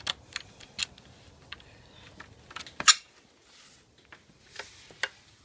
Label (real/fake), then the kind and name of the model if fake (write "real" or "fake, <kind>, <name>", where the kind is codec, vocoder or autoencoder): real